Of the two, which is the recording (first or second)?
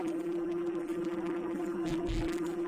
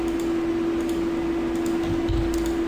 second